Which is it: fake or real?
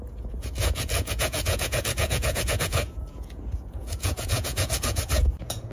fake